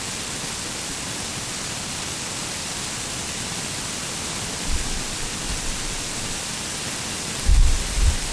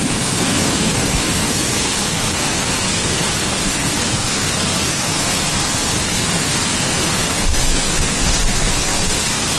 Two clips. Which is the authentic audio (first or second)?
first